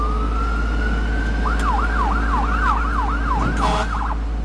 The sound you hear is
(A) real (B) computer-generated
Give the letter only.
A